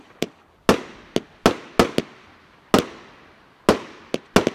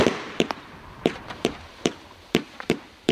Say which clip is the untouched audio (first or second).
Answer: first